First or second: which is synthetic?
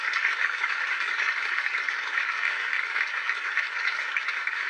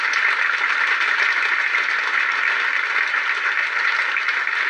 first